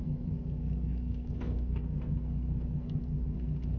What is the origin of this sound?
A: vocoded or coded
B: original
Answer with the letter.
A